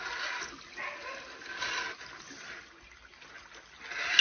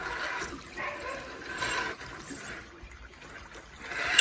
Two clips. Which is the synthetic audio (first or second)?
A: second